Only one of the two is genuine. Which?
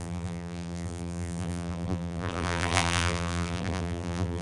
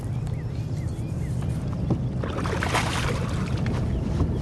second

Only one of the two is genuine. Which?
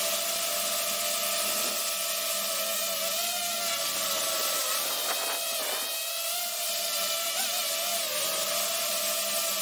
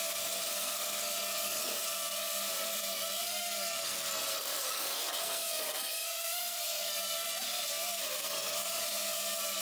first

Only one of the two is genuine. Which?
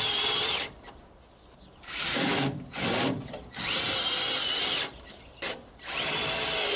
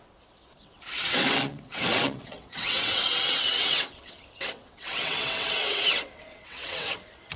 first